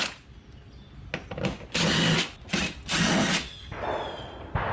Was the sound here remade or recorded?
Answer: recorded